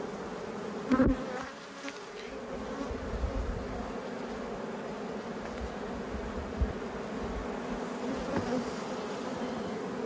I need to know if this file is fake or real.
real